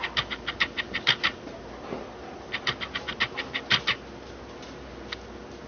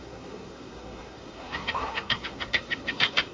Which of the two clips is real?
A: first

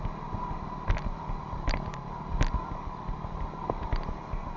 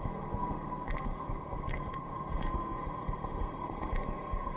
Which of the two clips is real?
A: first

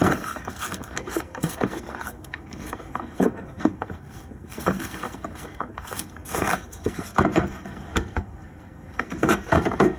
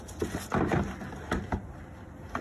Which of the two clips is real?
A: second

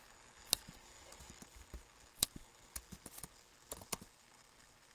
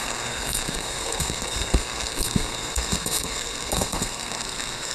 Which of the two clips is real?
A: first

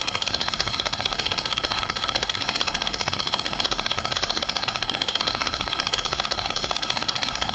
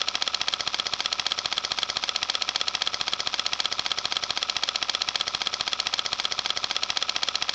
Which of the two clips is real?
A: second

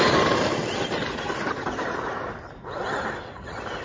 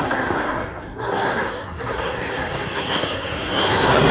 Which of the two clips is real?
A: first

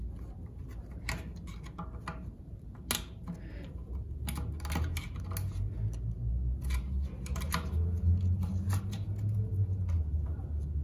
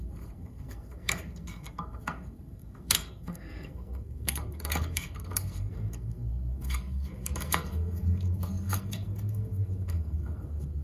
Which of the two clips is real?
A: first